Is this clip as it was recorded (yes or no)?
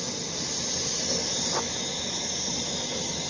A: yes